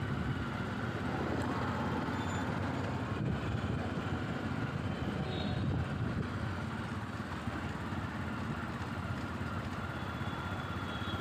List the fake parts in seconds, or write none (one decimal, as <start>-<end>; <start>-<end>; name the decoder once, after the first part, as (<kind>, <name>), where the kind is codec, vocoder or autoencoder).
none

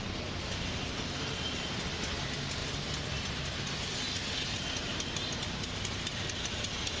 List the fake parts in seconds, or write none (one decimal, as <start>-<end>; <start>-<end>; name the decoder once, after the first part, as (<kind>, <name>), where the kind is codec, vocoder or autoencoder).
2.6-3.2 (vocoder, BigVGAN v2); 4.9-6.1

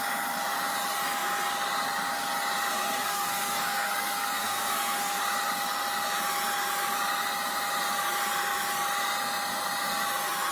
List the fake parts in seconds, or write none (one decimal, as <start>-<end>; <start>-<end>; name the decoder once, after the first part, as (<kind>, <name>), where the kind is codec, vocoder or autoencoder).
2.7-5.2 (codec, SNAC)

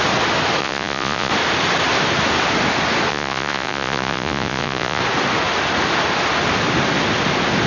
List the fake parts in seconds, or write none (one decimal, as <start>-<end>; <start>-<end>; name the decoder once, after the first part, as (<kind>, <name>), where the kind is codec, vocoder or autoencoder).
0.6-1.3 (vocoder, Vocos); 3.1-5.0

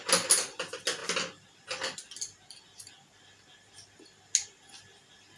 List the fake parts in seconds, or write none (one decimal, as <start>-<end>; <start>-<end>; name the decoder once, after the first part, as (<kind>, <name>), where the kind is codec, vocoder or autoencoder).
none

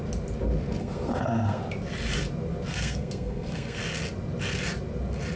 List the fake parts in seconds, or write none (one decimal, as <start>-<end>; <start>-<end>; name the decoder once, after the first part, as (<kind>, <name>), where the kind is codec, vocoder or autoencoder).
0.8-1.6 (codec, SNAC); 2.7-3.8

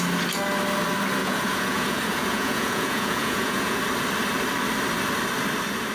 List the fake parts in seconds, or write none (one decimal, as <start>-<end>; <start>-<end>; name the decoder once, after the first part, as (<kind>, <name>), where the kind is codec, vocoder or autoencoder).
1.2-3.8 (vocoder, Vocos)